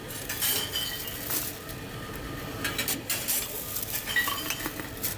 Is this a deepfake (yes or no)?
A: no